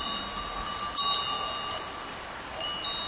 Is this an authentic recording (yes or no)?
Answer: yes